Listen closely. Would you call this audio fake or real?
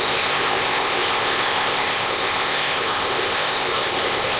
fake